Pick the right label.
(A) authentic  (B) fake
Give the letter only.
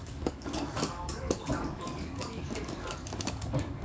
B